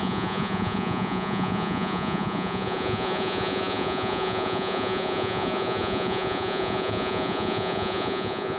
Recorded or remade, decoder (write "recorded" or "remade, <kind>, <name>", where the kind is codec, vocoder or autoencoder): remade, vocoder, Vocos